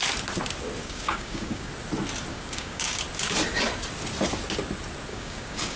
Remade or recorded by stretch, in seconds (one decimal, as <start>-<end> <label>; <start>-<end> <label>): 0.0-0.8 recorded; 0.8-1.7 remade; 1.7-2.3 recorded; 2.3-3.0 remade; 3.0-5.1 recorded; 5.1-5.8 remade